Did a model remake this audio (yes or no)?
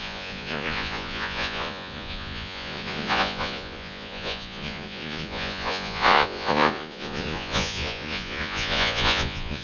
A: yes